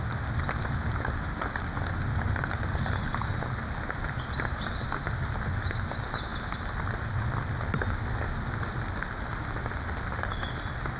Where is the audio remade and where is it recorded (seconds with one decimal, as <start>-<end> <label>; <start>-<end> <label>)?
0.0-11.0 recorded